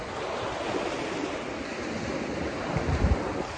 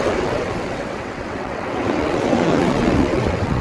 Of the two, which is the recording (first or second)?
first